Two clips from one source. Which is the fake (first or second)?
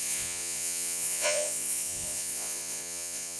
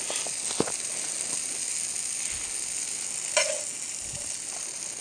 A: first